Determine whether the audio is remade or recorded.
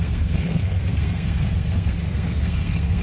remade